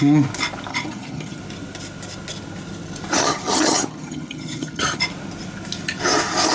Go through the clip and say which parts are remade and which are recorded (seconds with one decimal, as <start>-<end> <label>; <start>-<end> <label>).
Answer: 0.0-0.7 recorded; 0.7-1.4 remade; 1.4-3.2 recorded; 3.2-5.0 remade; 5.0-6.5 recorded